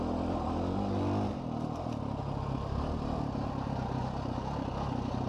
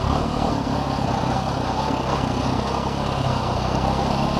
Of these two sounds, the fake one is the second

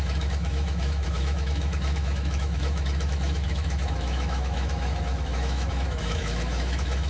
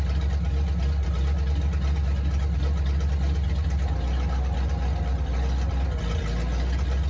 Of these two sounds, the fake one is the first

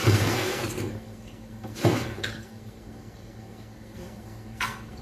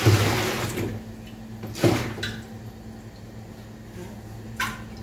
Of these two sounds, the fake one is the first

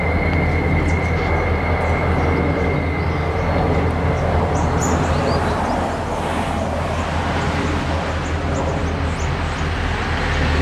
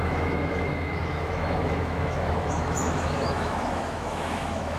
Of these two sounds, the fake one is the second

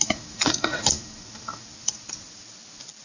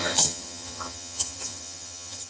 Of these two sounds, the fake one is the second